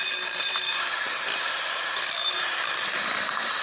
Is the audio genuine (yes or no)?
yes